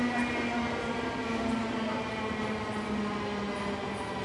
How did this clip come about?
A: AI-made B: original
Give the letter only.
B